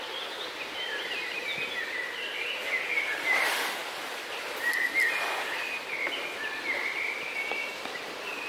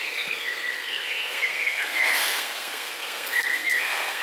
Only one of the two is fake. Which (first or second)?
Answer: second